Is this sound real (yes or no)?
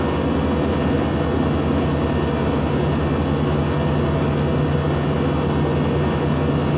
yes